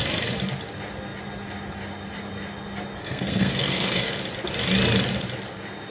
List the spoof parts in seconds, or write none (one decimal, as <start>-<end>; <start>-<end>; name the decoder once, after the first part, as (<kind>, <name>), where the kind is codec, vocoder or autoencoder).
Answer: 3.0-4.2 (codec, SNAC)